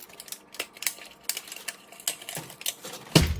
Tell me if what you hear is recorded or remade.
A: recorded